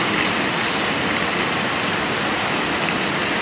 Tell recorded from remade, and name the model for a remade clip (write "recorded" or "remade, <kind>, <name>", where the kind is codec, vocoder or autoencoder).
recorded